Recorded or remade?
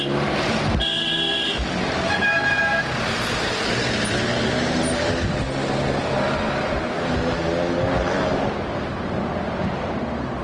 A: recorded